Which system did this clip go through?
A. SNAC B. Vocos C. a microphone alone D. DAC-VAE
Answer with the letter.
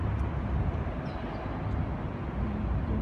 C